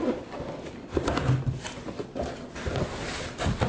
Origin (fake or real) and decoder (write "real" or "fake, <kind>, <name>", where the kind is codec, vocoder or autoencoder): fake, vocoder, BigVGAN v2